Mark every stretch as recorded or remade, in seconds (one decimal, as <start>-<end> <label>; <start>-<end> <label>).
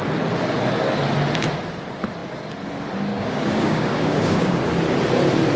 0.0-3.1 recorded; 3.1-4.6 remade; 4.6-5.6 recorded